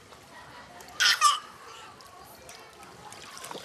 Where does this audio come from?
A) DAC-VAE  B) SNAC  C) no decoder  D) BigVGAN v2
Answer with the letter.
C